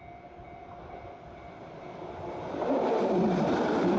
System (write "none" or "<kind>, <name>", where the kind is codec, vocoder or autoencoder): none